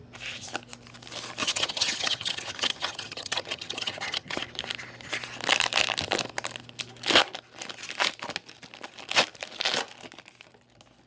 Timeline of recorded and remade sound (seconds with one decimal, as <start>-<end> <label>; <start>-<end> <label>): 0.0-1.4 recorded; 1.4-4.4 remade; 4.4-11.1 recorded